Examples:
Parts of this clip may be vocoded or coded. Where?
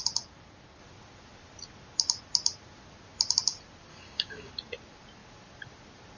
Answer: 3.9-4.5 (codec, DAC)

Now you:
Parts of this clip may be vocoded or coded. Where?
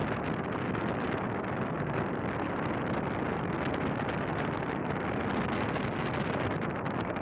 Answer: none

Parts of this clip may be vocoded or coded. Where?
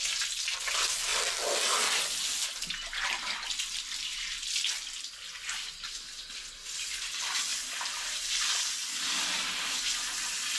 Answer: none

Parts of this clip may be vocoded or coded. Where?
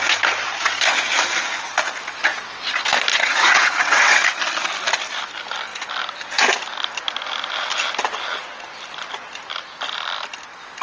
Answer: 3.1-4.4 (vocoder, WaveNeXt)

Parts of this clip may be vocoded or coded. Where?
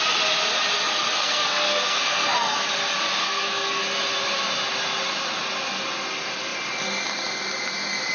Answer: 1.1-2.7 (codec, SNAC); 3.2-3.8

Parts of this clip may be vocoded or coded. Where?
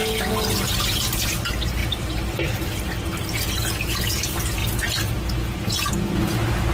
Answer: 0.0-0.7 (vocoder, BigVGAN v2); 1.8-2.8